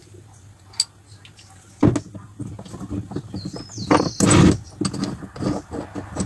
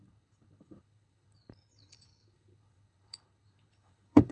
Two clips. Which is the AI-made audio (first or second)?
second